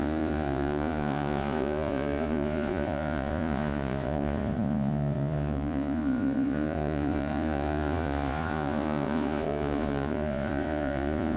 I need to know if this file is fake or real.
fake